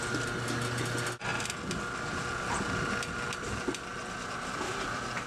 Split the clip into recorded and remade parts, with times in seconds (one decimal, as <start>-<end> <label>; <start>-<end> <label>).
0.0-5.3 recorded